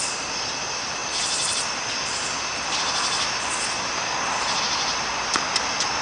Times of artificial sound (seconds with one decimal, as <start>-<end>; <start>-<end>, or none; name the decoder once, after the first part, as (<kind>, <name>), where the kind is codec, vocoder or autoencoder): none